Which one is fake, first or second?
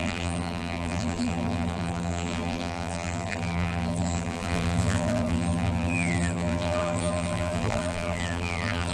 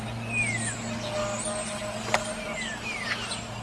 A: first